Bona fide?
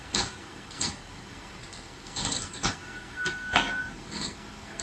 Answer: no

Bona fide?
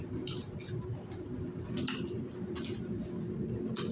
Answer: yes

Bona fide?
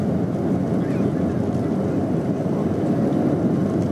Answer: yes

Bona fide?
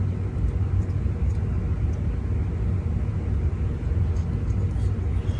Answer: yes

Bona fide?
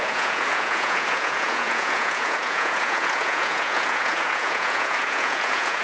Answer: no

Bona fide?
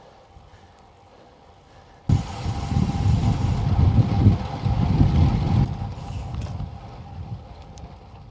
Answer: yes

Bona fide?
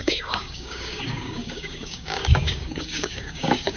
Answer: no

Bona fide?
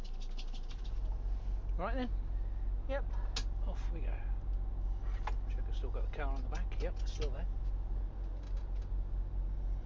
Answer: yes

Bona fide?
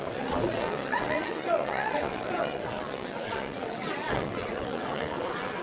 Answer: no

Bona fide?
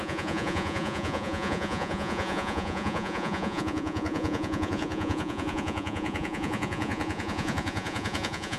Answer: no